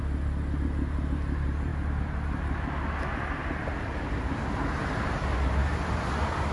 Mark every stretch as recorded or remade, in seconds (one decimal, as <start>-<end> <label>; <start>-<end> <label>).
0.0-6.5 recorded